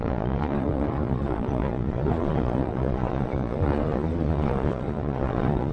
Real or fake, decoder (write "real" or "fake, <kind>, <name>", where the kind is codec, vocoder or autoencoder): fake, vocoder, Vocos